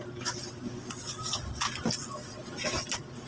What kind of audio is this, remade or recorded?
recorded